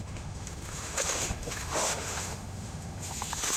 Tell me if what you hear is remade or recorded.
remade